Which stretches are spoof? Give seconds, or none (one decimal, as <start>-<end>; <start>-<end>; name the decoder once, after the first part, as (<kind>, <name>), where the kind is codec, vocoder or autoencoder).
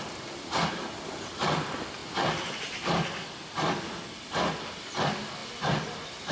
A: 5.4-6.3 (vocoder, BigVGAN v2)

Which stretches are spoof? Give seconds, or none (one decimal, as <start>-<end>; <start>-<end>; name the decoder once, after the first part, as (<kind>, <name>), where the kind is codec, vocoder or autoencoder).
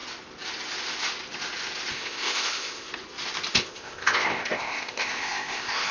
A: 1.9-2.9 (codec, ZipCodec); 3.5-5.9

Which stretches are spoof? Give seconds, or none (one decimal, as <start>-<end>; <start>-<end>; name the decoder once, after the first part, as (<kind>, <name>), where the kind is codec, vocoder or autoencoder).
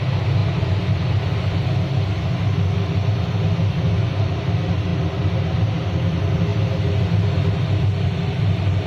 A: none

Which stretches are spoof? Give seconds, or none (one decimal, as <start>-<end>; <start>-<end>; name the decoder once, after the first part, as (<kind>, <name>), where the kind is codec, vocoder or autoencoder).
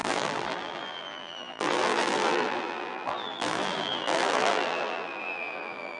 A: 0.0-6.0 (vocoder, BigVGAN v2)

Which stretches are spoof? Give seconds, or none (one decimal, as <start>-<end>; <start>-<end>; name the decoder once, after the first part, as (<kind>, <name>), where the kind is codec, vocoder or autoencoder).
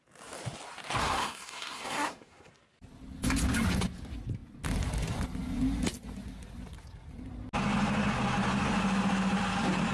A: 1.0-2.5 (codec, SNAC)